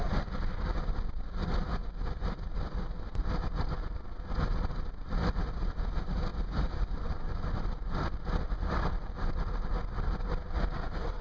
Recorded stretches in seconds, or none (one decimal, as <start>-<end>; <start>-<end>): 1.8-5.5